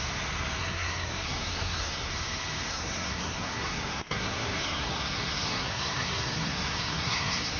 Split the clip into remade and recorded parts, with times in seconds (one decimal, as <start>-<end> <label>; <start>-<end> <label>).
0.0-0.6 recorded; 0.6-2.1 remade; 2.1-2.7 recorded; 2.7-7.6 remade